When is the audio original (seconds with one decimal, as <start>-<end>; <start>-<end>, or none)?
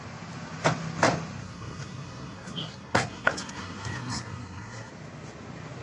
0.0-1.4; 4.9-5.8